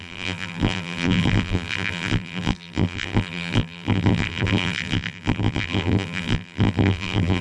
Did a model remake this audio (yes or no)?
yes